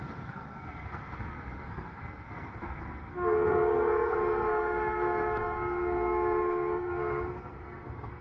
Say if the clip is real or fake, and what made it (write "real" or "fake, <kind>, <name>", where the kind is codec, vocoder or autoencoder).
fake, codec, SNAC